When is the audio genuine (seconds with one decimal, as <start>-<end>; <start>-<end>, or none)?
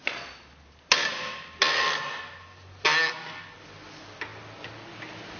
0.0-5.4